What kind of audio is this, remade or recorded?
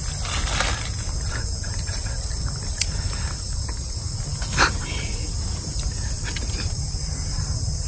recorded